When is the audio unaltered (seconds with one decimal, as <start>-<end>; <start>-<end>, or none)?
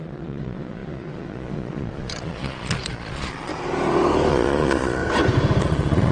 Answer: 3.5-4.3; 5.0-5.6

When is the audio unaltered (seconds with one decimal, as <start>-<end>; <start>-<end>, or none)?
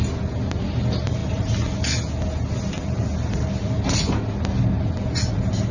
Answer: 0.0-5.7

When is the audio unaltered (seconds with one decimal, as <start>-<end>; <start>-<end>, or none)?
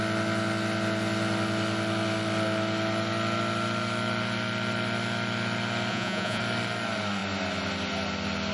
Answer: 0.0-5.9; 6.4-8.5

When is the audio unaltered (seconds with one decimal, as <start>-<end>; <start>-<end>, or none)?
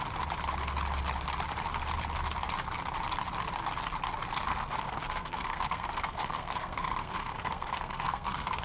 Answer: 0.0-4.5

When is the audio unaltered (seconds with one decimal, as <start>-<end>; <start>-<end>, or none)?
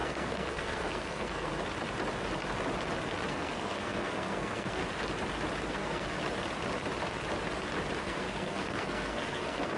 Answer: 1.5-3.3; 4.8-5.7; 6.2-8.0